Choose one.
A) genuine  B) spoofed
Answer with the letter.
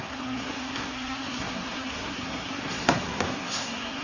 B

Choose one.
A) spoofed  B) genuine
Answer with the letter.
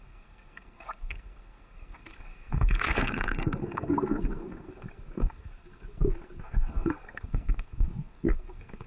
A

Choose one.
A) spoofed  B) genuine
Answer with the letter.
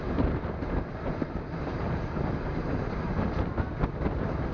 B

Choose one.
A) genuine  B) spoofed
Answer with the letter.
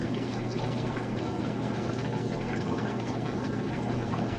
B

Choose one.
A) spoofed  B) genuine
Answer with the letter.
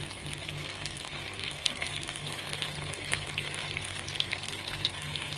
A